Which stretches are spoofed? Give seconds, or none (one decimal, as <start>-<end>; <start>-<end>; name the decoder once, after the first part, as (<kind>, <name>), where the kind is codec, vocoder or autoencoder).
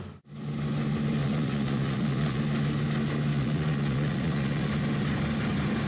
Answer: 1.2-2.4 (vocoder, Vocos); 3.3-4.7